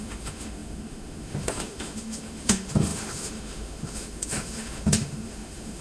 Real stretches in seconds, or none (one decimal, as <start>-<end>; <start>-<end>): none